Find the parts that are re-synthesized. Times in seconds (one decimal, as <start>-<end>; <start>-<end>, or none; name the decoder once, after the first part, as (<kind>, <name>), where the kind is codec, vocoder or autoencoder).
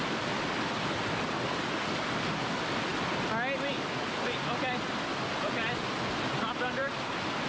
none